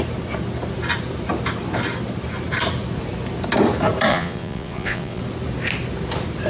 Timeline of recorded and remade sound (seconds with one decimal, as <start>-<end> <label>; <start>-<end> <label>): 0.0-4.1 recorded; 4.1-5.2 remade; 5.2-6.5 recorded